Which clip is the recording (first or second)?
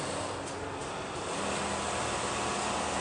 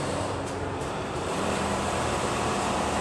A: first